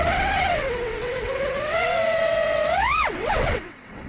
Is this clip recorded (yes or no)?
no